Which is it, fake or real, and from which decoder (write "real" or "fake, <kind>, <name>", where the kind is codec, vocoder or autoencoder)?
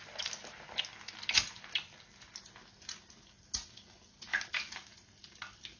real